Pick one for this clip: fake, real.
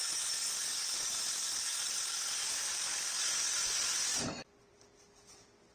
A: real